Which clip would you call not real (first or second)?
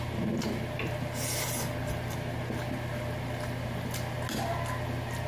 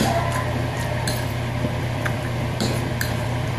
second